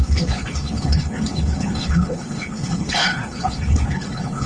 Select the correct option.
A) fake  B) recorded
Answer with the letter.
A